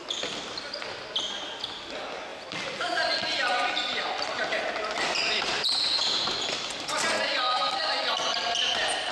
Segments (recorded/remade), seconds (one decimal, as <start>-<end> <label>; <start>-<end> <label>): 0.0-7.4 recorded; 7.4-7.9 remade; 7.9-9.1 recorded